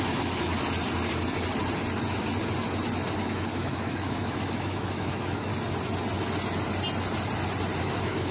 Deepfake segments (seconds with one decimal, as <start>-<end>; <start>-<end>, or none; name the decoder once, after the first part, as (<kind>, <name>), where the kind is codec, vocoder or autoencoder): 0.0-0.5 (autoencoder, DAC-VAE); 3.2-5.5; 7.8-8.3